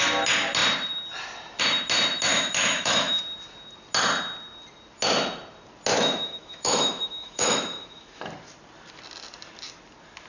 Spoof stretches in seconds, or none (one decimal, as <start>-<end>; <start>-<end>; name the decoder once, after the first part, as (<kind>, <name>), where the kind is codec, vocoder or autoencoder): 2.3-3.2 (autoencoder, DAC-VAE); 5.9-8.2